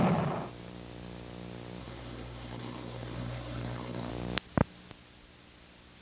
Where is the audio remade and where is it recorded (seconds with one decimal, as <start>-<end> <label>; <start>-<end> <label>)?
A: 0.0-1.8 recorded; 1.8-4.1 remade; 4.1-6.0 recorded